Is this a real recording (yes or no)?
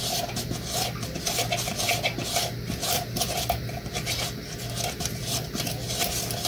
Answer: yes